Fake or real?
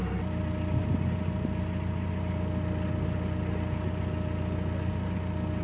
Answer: real